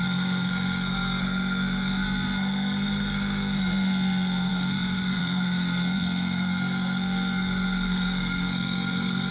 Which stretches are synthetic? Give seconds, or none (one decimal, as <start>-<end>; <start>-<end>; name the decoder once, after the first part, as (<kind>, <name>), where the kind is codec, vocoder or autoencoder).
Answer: 0.0-9.3 (codec, SNAC)